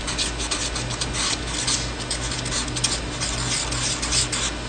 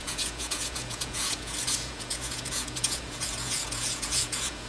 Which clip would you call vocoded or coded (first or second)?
second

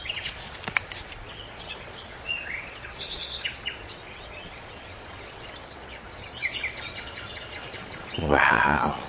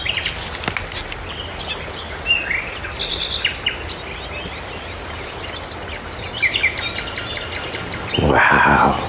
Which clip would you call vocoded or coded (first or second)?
first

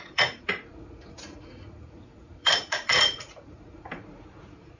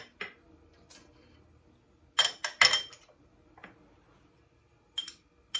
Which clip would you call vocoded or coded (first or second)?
first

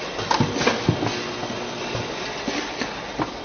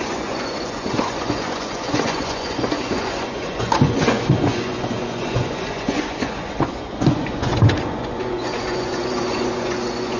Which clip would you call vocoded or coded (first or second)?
second